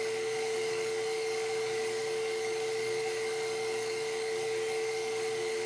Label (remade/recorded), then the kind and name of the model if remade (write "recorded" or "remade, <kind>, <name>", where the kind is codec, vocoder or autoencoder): remade, codec, DAC